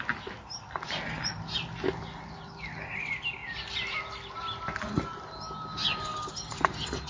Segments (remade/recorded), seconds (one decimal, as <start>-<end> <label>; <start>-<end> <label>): 0.0-7.1 recorded